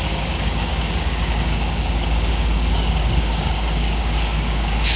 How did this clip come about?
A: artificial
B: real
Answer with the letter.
A